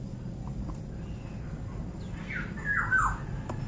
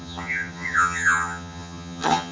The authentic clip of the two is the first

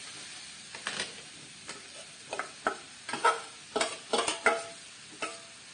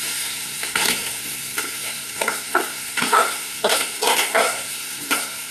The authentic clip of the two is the first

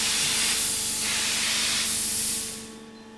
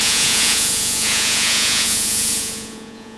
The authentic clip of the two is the first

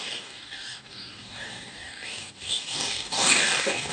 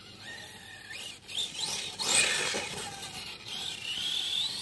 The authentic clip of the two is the second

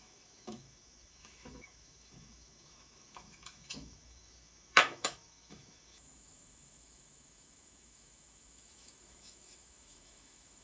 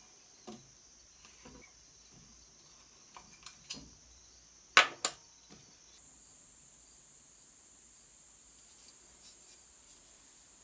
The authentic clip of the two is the second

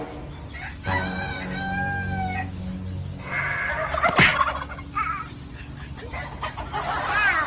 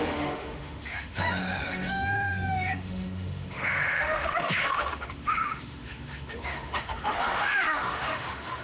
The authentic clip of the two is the first